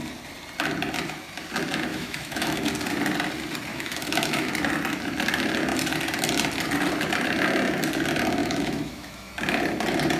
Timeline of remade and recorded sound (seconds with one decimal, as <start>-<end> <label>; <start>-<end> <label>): 0.0-1.9 recorded; 1.9-2.7 remade; 2.7-3.7 recorded; 3.7-4.5 remade; 4.5-8.4 recorded; 8.4-9.3 remade; 9.3-10.2 recorded